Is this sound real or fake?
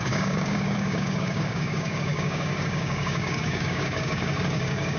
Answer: fake